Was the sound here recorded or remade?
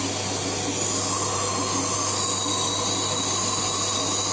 recorded